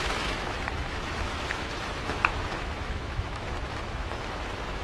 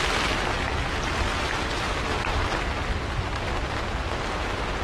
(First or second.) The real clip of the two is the second